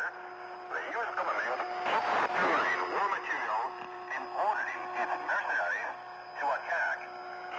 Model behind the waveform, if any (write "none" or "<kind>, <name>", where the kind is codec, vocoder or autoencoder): none